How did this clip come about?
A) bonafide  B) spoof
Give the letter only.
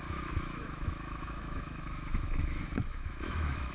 B